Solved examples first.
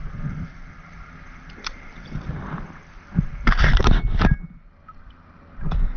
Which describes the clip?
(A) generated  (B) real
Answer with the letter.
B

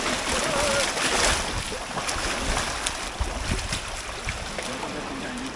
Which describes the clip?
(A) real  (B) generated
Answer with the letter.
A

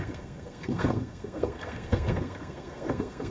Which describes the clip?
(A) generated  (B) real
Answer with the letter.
A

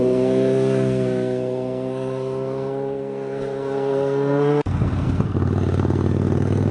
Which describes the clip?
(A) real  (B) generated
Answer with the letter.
B